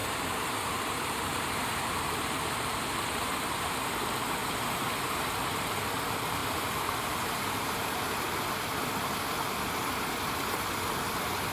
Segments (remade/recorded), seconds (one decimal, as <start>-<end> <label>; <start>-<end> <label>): 0.0-3.9 remade; 3.9-4.4 recorded; 4.4-5.7 remade; 5.7-6.4 recorded; 6.4-8.3 remade; 8.3-11.5 recorded